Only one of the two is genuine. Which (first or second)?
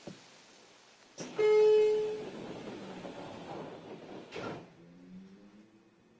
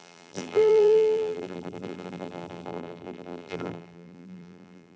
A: first